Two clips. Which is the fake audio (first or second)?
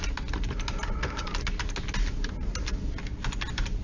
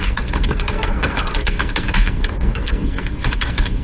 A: second